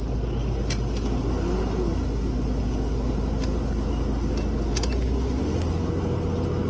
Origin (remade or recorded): recorded